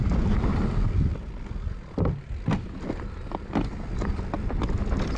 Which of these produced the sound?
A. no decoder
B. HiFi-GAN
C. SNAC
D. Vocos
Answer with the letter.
A